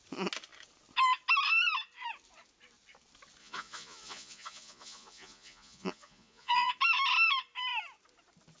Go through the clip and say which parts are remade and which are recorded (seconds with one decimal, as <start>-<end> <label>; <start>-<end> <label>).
0.0-3.4 recorded; 3.4-6.7 remade; 6.7-8.6 recorded